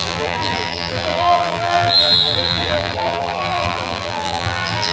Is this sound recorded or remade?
remade